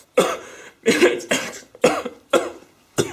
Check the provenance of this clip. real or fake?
fake